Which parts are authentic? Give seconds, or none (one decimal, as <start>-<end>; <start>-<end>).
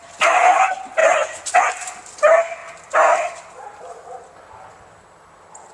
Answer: 0.0-5.7